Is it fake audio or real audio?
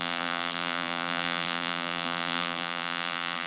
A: fake